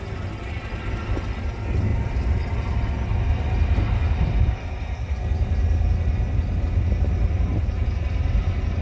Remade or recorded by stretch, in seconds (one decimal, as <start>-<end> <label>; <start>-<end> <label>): 0.0-8.8 recorded